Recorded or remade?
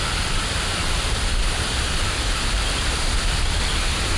recorded